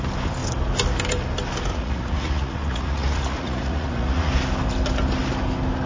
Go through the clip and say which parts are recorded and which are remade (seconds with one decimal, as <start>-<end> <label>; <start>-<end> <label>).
0.0-1.7 recorded; 1.7-4.3 remade; 4.3-5.9 recorded